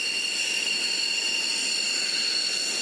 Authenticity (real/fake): real